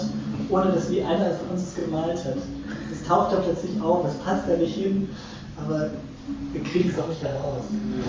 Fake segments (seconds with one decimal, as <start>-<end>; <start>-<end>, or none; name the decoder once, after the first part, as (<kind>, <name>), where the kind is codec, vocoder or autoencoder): 6.8-8.1 (codec, SNAC)